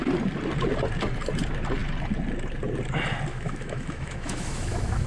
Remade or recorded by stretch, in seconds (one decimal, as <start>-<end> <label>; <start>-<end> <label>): 0.0-3.3 recorded; 3.3-5.1 remade